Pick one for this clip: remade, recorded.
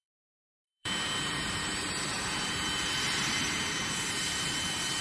remade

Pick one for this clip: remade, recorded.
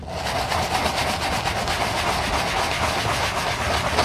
recorded